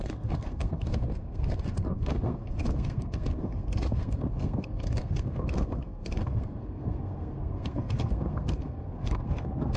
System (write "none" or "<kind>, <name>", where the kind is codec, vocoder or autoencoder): codec, SNAC